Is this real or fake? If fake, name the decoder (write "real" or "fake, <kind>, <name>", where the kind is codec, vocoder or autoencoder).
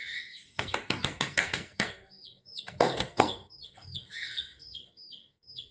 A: fake, codec, SNAC